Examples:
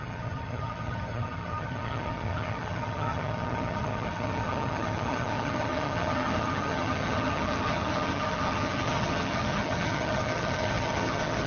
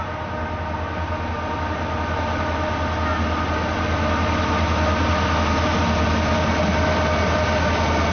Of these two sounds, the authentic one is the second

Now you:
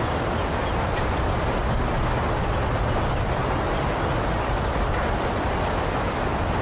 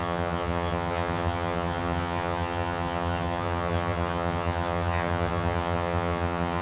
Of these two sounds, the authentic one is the first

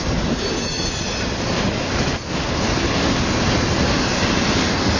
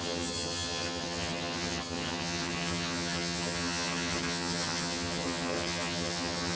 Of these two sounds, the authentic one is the first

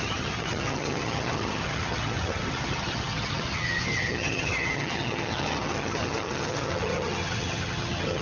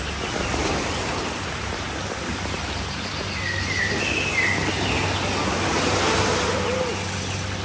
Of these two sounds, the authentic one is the second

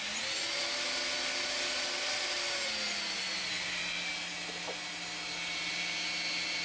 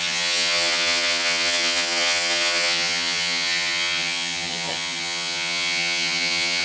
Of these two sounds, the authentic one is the first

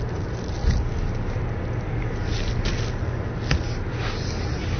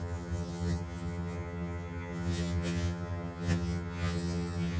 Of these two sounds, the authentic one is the first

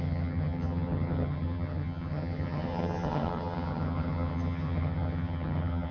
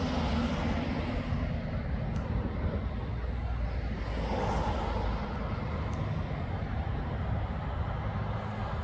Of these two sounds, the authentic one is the second